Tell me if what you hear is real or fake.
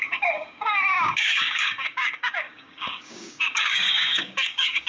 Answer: fake